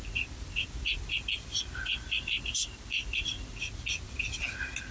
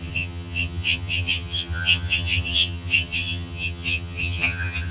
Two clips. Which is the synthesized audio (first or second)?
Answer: second